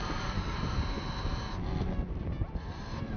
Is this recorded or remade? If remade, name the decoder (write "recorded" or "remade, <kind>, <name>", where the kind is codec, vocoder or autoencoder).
remade, vocoder, BigVGAN v2